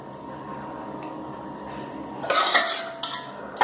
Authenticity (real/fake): real